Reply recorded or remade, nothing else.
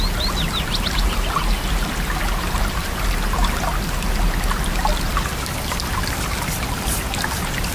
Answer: recorded